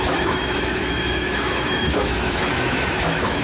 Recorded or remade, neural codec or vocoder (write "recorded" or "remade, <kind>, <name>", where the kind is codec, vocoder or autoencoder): remade, autoencoder, DAC-VAE